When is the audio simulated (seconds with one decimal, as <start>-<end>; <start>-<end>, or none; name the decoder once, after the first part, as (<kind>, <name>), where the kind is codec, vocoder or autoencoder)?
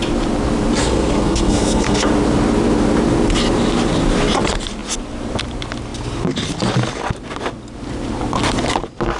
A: 0.8-2.1 (codec, SNAC)